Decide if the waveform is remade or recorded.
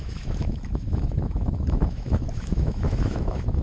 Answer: remade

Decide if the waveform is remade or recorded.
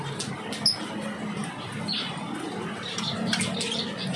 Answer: recorded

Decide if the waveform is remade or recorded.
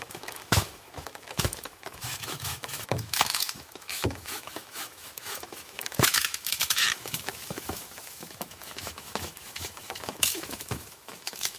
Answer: remade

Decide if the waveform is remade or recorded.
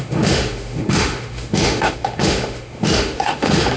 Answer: remade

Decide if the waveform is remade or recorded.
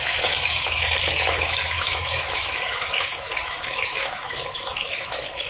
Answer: remade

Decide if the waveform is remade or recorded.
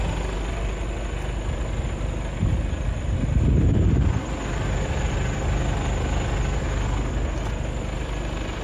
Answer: recorded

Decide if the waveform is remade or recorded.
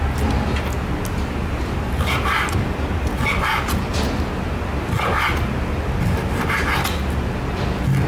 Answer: recorded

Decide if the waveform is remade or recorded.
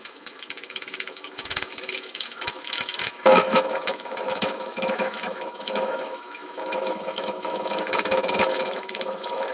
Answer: remade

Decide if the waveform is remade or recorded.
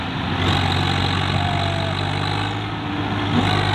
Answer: recorded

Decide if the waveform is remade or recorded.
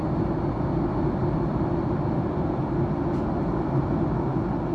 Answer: recorded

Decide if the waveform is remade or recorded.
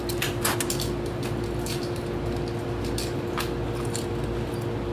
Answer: recorded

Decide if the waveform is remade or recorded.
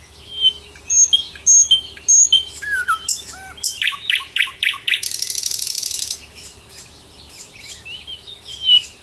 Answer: remade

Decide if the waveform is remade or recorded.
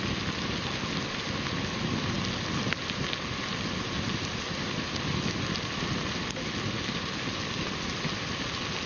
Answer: recorded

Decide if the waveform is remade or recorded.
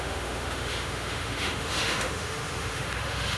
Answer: remade